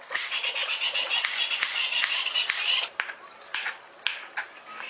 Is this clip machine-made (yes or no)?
no